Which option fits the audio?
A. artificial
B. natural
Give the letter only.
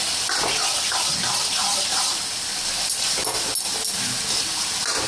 B